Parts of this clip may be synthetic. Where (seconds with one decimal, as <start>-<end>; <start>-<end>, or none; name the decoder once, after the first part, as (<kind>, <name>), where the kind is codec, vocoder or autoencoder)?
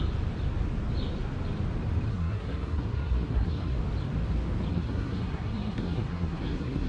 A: 2.1-3.8 (codec, SNAC); 4.7-6.9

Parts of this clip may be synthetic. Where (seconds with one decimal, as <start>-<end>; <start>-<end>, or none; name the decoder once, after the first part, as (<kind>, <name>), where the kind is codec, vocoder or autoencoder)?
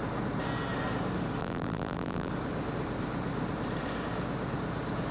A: 1.4-2.3 (vocoder, BigVGAN v2)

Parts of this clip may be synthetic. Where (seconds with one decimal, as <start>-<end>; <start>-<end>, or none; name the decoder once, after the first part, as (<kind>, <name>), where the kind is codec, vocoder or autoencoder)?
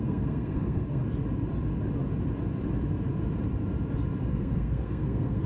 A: 0.0-1.0 (codec, SNAC); 4.3-5.5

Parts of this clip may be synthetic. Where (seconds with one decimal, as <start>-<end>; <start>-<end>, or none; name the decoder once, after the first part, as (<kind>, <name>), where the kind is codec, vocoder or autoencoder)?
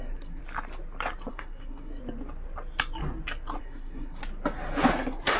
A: 0.0-0.4 (codec, SNAC); 1.3-2.0; 3.6-4.2; 4.9-5.4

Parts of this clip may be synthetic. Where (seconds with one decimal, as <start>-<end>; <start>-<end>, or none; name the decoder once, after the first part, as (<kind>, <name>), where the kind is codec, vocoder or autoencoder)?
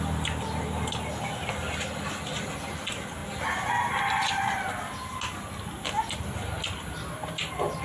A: none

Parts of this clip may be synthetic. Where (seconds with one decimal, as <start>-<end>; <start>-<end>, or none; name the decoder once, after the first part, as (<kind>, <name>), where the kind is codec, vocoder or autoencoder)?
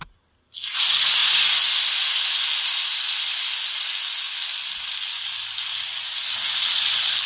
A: none